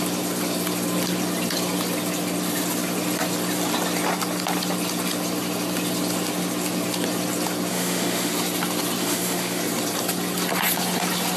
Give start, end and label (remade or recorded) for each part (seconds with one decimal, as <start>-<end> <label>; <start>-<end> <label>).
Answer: 0.0-7.7 recorded; 7.7-8.3 remade; 8.3-9.0 recorded; 9.0-9.6 remade; 9.6-11.4 recorded